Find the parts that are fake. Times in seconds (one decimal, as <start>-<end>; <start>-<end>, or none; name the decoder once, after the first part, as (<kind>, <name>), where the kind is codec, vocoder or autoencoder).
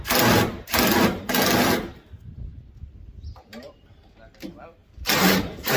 2.5-3.9 (vocoder, BigVGAN v2)